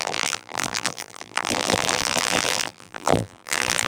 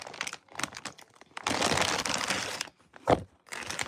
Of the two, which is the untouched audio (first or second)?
second